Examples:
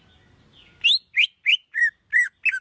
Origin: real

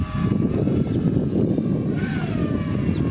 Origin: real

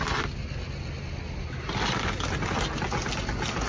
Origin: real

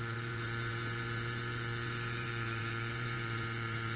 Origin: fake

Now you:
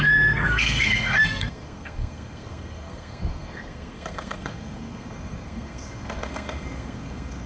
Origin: fake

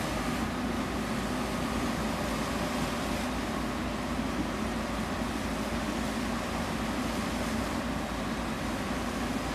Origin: real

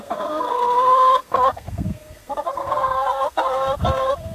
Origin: fake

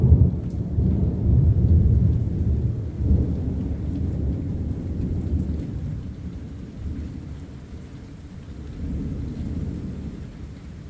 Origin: real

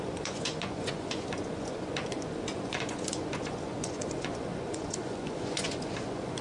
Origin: fake